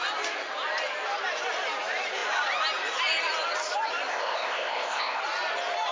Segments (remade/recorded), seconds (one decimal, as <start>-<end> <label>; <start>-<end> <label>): 0.0-4.1 recorded; 4.1-5.2 remade; 5.2-5.9 recorded

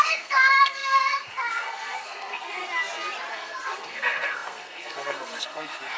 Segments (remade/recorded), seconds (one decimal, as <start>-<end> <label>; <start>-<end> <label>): 0.0-2.6 remade; 2.6-3.3 recorded; 3.3-6.0 remade